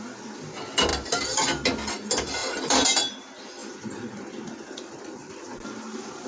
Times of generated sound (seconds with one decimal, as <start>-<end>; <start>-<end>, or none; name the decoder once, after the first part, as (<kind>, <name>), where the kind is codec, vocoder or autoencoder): 3.6-4.4 (vocoder, BigVGAN v2)